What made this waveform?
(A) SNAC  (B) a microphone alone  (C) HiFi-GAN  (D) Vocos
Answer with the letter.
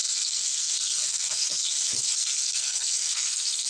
A